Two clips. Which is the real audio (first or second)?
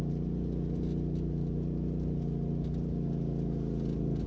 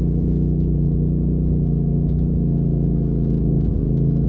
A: first